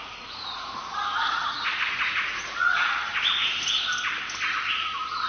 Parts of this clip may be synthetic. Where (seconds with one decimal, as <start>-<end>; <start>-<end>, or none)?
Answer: 0.0-3.1; 4.4-5.3